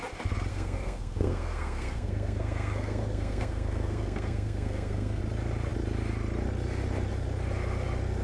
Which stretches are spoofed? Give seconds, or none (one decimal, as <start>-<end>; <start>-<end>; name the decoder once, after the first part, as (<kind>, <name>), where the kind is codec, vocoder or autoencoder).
0.5-5.2 (codec, SNAC)